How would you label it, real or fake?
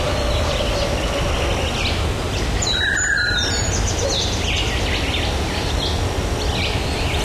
real